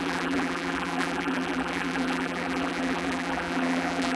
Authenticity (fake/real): fake